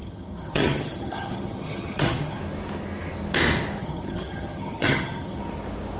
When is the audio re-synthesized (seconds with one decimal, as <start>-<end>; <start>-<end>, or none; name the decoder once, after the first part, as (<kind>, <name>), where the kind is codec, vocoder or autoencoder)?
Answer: 0.0-2.4 (vocoder, HiFi-GAN); 3.8-5.4